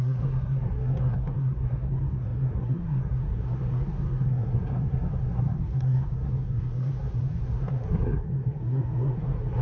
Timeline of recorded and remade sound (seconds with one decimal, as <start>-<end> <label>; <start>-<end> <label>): 0.0-9.6 remade